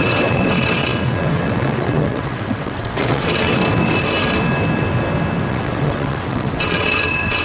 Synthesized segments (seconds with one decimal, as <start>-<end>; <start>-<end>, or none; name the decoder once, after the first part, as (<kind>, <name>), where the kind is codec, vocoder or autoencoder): 0.0-3.6 (vocoder, WaveNeXt); 5.5-7.4